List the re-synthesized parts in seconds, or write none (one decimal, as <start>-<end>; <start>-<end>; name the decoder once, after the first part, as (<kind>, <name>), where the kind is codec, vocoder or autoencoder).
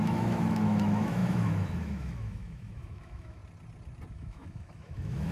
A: 0.0-3.4 (autoencoder, DAC-VAE); 4.1-5.3